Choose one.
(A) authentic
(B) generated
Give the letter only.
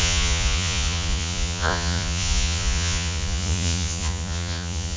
B